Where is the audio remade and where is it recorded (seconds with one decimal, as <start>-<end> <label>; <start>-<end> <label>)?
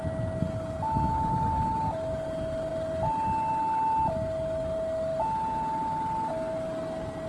0.0-7.3 recorded